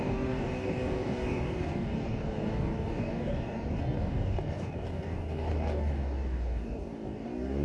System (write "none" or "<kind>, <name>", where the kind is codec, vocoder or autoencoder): codec, DAC